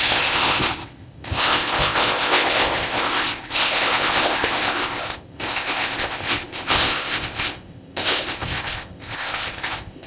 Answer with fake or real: fake